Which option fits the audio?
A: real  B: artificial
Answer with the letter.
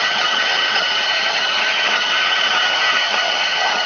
B